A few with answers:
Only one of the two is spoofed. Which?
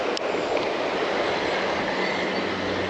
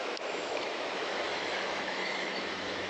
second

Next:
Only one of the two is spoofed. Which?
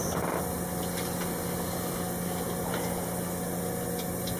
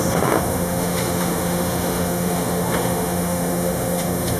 second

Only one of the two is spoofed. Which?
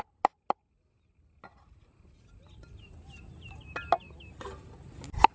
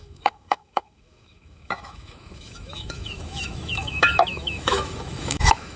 second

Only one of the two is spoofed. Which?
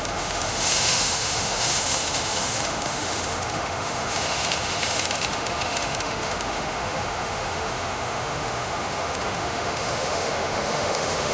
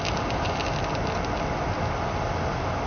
first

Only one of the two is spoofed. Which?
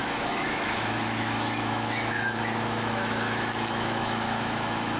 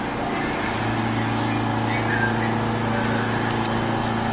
first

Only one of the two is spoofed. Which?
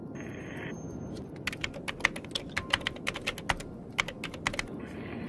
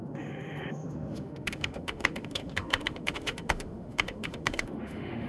second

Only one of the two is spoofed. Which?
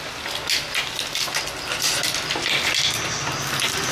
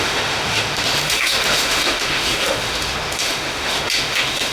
second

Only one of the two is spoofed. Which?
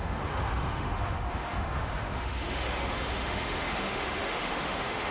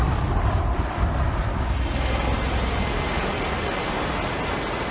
first